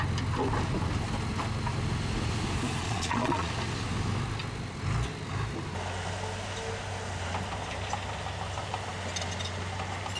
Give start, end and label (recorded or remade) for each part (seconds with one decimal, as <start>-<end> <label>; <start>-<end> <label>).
0.0-2.8 recorded; 2.8-3.5 remade; 3.5-10.2 recorded